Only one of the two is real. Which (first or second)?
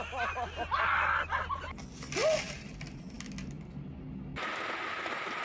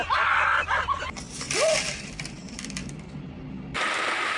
first